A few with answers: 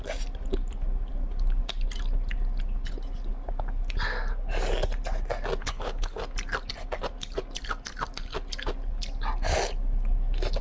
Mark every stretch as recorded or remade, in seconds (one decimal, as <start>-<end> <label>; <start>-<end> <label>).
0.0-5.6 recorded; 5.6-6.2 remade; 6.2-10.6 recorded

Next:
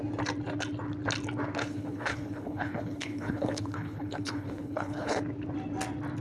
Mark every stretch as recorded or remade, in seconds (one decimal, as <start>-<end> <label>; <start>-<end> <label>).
0.0-1.6 recorded; 1.6-5.2 remade; 5.2-6.2 recorded

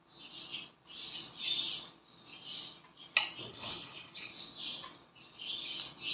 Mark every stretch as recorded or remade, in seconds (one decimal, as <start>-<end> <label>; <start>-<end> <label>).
0.0-3.5 recorded; 3.5-4.3 remade; 4.3-6.1 recorded

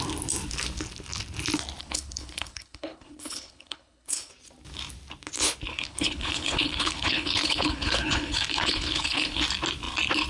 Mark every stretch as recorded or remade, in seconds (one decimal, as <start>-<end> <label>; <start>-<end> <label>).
0.0-1.8 recorded; 1.8-4.3 remade; 4.3-5.7 recorded; 5.7-9.4 remade; 9.4-10.3 recorded